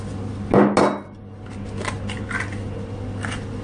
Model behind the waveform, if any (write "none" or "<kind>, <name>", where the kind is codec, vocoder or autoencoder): none